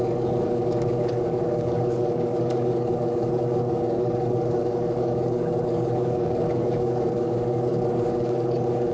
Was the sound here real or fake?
fake